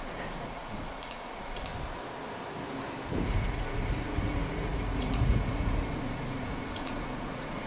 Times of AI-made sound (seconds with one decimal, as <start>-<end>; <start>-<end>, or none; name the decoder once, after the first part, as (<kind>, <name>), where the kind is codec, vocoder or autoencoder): 0.0-1.7 (vocoder, Vocos); 3.2-7.7